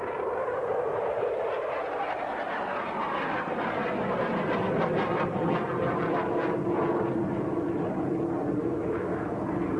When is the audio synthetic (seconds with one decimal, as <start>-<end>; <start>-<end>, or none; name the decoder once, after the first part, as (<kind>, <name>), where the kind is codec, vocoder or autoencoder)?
8.6-9.4 (autoencoder, DAC-VAE)